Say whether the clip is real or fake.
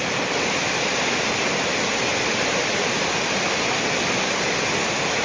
real